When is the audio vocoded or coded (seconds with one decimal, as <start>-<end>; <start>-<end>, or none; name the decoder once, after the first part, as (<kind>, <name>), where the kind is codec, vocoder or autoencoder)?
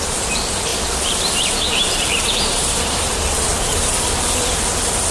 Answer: 0.7-3.8 (vocoder, BigVGAN v2)